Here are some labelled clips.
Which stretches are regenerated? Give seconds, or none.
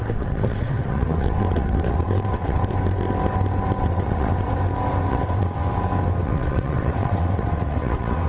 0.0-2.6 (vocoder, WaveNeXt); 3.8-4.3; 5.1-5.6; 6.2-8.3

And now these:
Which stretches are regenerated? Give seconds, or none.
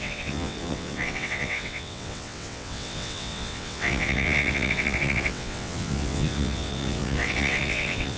0.0-8.2 (vocoder, WaveNeXt)